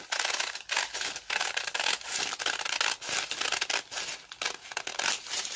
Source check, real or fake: real